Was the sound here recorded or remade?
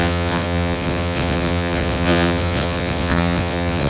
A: remade